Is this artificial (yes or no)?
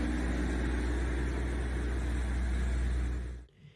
no